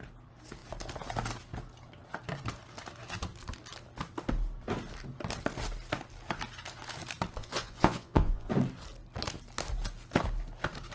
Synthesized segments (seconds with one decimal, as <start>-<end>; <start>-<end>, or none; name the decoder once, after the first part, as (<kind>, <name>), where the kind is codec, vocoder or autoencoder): 7.4-8.5 (vocoder, Vocos)